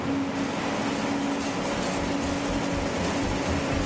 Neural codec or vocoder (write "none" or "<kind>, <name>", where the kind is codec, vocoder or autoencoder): none